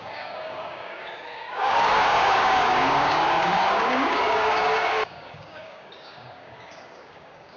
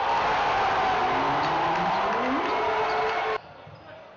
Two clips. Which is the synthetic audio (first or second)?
first